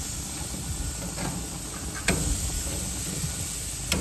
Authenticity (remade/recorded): recorded